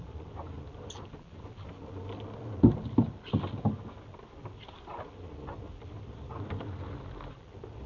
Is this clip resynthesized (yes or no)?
no